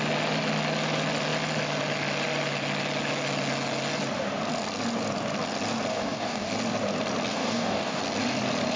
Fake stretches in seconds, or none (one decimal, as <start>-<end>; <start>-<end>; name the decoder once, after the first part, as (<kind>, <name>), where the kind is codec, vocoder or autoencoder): 5.9-6.5 (codec, DAC); 7.3-8.0